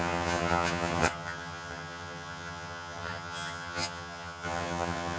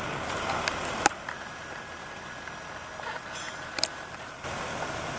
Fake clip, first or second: first